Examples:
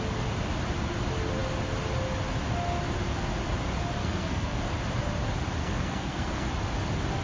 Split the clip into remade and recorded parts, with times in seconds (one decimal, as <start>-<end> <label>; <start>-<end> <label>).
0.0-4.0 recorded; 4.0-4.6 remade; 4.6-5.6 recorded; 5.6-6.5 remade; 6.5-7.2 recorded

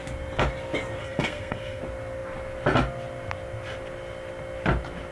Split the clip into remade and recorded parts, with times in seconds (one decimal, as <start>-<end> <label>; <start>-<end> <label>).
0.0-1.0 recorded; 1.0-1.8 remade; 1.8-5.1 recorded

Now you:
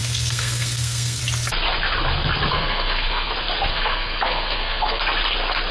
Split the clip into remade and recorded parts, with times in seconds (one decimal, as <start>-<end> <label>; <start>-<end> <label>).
0.0-1.2 remade; 1.2-2.5 recorded; 2.5-3.3 remade; 3.3-3.7 recorded; 3.7-5.0 remade; 5.0-5.7 recorded